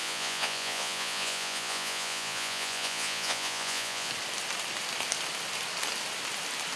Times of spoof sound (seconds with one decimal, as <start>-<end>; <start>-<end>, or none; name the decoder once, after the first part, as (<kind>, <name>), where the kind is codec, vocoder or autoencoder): 0.0-4.1 (vocoder, Vocos)